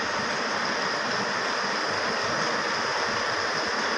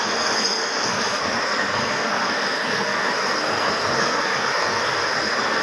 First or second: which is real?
first